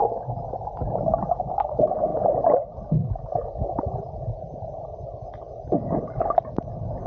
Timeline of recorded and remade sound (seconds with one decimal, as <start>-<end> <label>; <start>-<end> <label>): 0.0-7.1 recorded